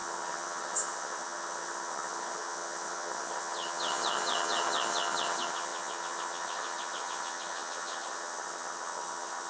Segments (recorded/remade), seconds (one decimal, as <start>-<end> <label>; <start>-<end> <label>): 0.0-9.5 remade